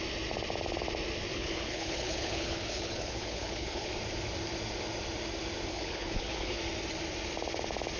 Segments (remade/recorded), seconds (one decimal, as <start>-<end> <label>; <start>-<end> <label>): 0.0-1.3 recorded; 1.3-3.9 remade; 3.9-5.7 recorded; 5.7-6.6 remade; 6.6-8.0 recorded